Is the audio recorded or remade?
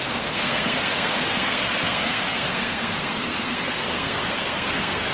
remade